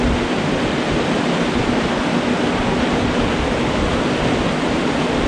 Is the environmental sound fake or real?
real